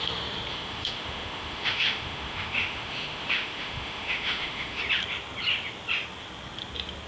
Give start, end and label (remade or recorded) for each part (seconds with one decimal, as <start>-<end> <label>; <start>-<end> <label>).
0.0-0.5 recorded; 0.5-4.8 remade; 4.8-7.1 recorded